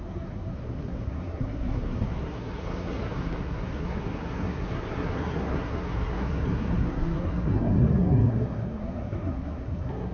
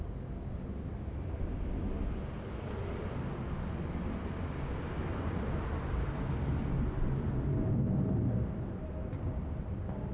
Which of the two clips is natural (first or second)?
second